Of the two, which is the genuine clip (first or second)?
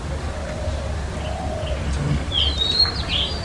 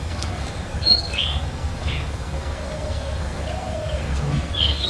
first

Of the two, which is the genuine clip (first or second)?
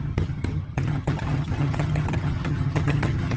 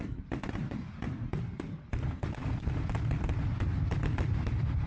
second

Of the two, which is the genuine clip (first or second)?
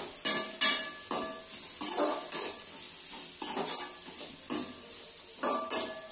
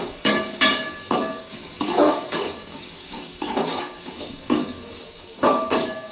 first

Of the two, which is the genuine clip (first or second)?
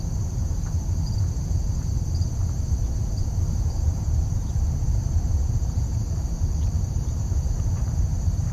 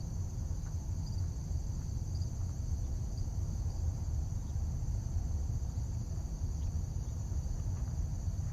second